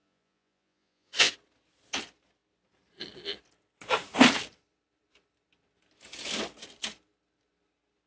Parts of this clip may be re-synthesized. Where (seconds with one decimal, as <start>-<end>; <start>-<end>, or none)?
0.0-1.3